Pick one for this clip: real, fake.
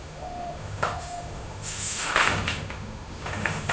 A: fake